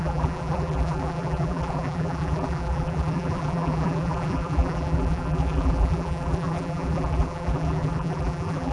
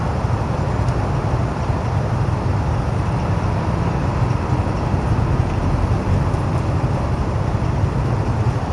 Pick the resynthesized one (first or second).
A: first